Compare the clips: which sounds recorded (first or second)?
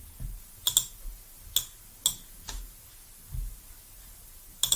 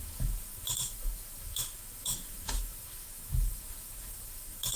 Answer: first